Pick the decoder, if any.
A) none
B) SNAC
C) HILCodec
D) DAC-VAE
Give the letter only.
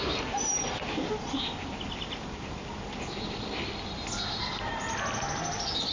A